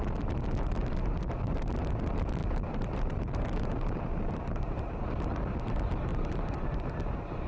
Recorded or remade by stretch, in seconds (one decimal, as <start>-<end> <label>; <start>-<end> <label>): 0.0-0.8 recorded; 0.8-1.3 remade; 1.3-2.4 recorded; 2.4-5.3 remade; 5.3-6.1 recorded; 6.1-7.5 remade